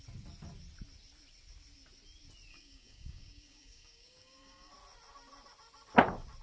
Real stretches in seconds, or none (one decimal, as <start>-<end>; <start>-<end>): 0.0-2.5; 4.7-6.4